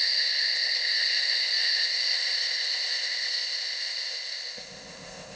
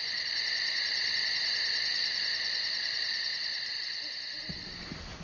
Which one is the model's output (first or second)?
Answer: first